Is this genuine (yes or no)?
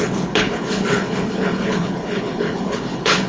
no